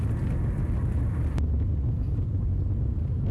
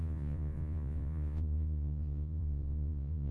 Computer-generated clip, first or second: second